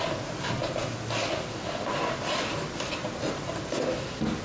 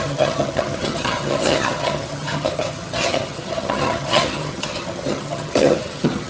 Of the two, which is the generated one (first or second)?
second